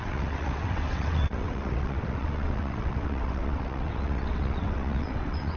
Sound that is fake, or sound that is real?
fake